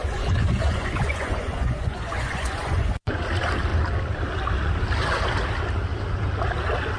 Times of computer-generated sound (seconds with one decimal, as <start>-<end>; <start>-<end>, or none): 0.0-3.2